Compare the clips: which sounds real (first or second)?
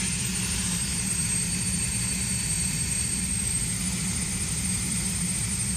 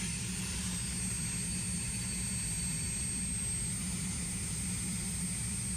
second